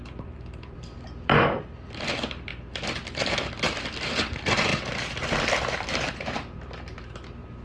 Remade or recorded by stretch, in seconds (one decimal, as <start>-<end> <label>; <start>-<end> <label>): 0.0-7.6 remade

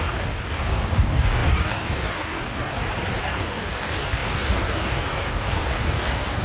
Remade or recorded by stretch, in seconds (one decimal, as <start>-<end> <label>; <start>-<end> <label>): 0.0-2.7 remade; 2.7-3.2 recorded; 3.2-6.4 remade